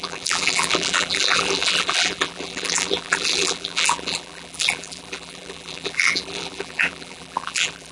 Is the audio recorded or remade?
remade